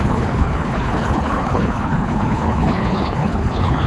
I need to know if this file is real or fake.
fake